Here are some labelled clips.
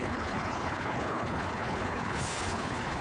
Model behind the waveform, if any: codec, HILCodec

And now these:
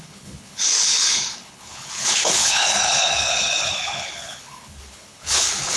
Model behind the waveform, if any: codec, HILCodec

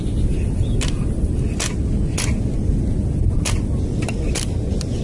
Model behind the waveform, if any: none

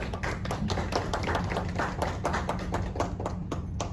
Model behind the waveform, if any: none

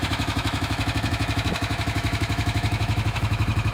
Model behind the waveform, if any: autoencoder, DAC-VAE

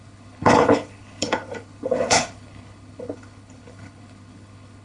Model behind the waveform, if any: codec, HILCodec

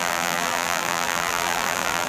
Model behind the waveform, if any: vocoder, BigVGAN v2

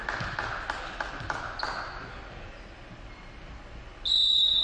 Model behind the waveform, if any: none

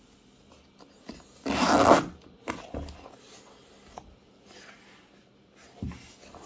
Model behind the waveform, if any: none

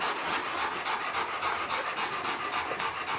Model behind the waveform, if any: none